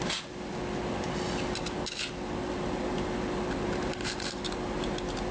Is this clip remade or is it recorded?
recorded